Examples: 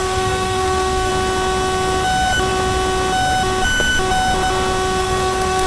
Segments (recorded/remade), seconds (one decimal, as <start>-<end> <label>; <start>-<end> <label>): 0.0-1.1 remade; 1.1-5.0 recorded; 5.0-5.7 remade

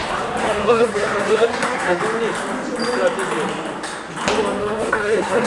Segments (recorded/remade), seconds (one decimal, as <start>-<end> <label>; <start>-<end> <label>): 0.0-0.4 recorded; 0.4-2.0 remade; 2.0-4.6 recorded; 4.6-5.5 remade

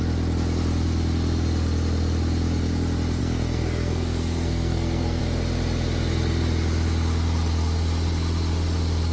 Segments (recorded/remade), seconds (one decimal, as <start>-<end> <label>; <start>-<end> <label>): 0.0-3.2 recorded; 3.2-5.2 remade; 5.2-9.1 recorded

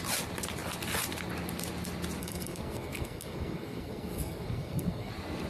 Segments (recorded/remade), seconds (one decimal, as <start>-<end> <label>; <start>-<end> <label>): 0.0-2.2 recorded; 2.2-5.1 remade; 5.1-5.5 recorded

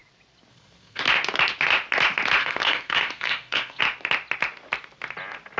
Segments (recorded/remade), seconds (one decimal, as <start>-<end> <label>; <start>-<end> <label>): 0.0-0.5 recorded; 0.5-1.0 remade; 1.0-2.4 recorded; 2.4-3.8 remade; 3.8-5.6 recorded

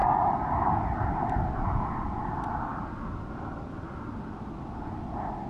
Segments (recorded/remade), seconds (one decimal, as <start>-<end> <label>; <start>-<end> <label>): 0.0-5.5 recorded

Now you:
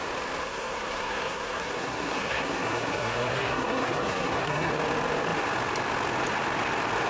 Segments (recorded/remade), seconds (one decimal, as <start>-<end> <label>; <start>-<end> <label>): 0.0-0.4 recorded; 0.4-4.7 remade; 4.7-7.1 recorded